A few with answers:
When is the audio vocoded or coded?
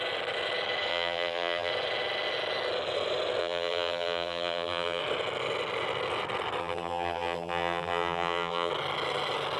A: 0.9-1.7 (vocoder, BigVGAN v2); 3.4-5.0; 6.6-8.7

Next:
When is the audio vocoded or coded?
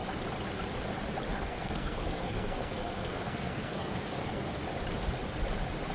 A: 1.3-4.6 (codec, SNAC)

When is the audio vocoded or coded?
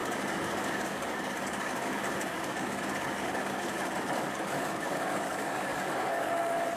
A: 0.0-6.8 (codec, DAC)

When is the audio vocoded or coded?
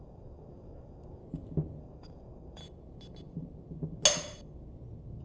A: 0.0-1.2 (codec, DAC); 1.8-2.6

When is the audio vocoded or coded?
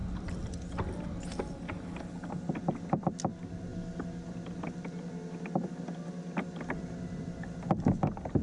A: none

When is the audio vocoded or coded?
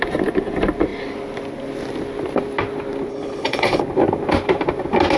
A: 3.1-3.8 (codec, HILCodec)